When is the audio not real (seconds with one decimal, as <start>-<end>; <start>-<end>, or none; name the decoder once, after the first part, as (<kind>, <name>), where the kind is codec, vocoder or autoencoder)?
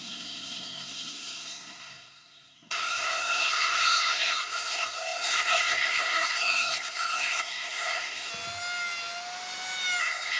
0.0-8.3 (codec, SNAC); 10.0-10.4